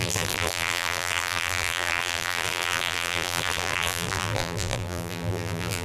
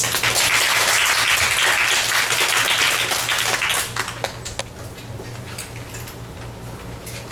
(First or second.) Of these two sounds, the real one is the second